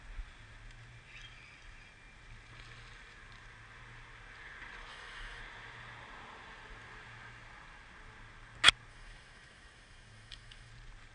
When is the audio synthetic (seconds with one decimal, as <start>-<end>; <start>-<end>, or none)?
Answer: 4.9-5.4; 8.9-10.7